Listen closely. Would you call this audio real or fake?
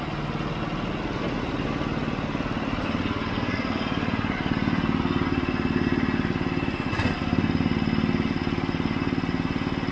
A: real